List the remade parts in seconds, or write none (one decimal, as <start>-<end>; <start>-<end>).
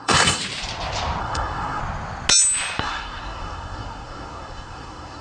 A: 0.0-0.4; 1.2-1.8; 2.8-5.2